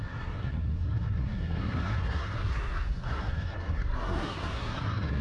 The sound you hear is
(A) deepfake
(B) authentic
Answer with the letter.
A